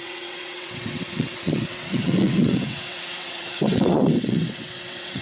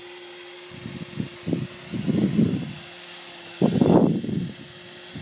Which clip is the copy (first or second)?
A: first